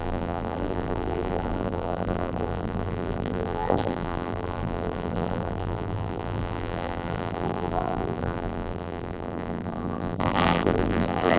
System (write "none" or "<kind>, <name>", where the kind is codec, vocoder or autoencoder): vocoder, BigVGAN v2